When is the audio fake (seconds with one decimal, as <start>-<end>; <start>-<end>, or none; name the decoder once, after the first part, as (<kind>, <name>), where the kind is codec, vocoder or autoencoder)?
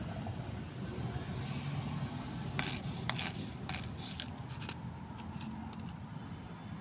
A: none